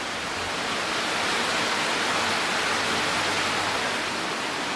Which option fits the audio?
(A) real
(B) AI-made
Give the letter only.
A